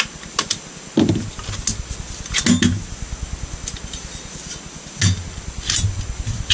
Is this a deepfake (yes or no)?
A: no